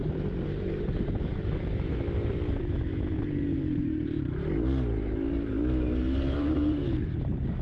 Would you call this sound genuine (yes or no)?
no